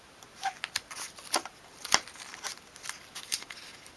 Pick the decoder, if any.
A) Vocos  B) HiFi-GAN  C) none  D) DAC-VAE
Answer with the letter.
C